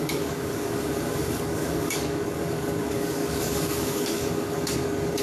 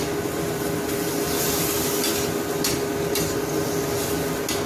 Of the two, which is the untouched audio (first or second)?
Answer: second